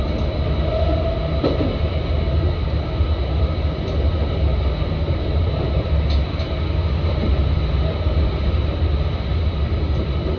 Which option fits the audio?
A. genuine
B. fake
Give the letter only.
A